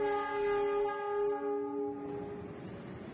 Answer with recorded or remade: recorded